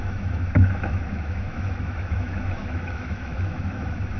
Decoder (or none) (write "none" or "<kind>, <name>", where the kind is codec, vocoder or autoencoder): autoencoder, DAC-VAE